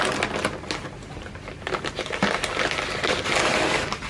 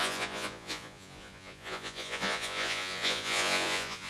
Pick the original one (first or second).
first